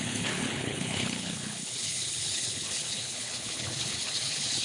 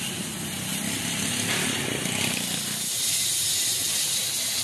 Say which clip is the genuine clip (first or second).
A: second